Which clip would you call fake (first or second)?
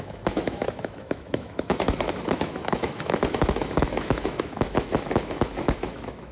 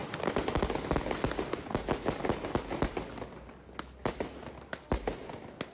first